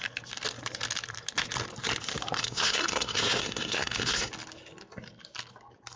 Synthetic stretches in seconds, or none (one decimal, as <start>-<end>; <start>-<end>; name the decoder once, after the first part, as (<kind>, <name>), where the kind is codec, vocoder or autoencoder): 2.4-4.3 (codec, SNAC)